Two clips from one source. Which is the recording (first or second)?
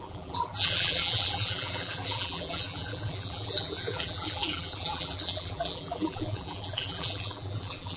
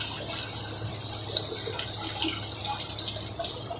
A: second